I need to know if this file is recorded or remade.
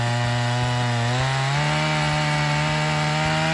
recorded